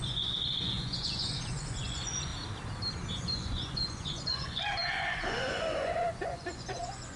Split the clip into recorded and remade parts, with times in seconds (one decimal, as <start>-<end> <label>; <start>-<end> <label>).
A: 0.0-2.3 remade; 2.3-3.2 recorded; 3.2-7.2 remade